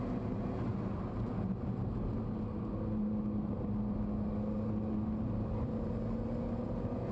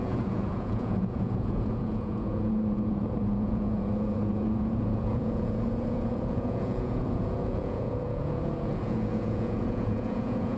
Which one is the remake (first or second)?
second